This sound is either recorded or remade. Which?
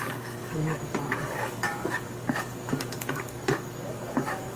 remade